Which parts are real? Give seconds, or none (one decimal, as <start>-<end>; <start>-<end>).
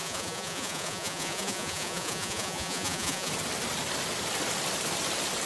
3.3-5.5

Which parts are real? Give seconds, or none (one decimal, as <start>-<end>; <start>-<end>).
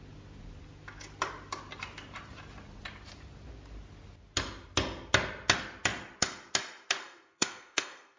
0.0-7.0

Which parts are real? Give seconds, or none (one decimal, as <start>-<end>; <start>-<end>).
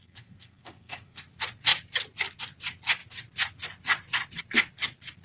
1.2-5.2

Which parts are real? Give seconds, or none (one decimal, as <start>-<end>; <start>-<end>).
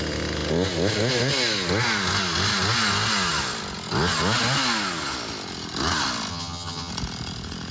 0.0-6.3; 6.9-7.7